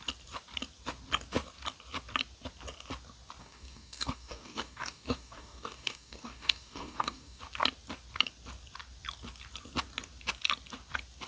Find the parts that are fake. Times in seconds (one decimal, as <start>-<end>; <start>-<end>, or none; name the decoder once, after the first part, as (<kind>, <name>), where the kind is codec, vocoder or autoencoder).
3.4-7.4 (codec, DAC)